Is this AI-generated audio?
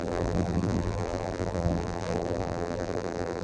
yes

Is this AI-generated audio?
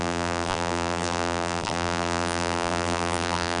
yes